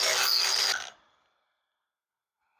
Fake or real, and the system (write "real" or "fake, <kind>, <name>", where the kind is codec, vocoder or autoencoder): real